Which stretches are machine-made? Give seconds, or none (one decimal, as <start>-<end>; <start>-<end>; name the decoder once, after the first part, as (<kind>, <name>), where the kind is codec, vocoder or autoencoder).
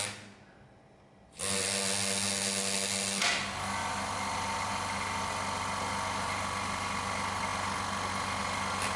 none